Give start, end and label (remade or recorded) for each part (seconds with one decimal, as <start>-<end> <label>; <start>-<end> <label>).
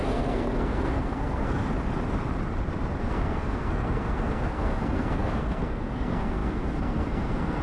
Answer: 0.0-1.6 remade; 1.6-3.0 recorded; 3.0-7.6 remade